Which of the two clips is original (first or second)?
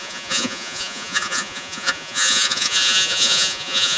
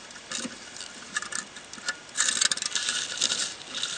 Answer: second